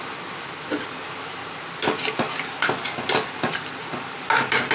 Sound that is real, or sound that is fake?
real